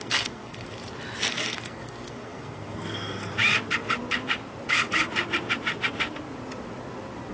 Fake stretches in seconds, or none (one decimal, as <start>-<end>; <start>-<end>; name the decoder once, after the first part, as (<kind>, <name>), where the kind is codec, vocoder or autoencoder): 0.0-0.8 (codec, SNAC); 1.3-3.3